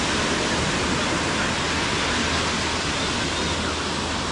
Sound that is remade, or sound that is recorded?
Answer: recorded